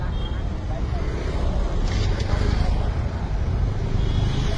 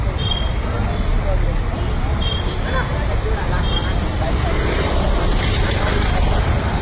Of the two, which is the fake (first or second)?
second